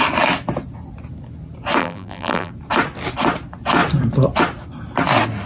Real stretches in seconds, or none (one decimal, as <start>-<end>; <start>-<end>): 0.0-1.8; 2.5-5.5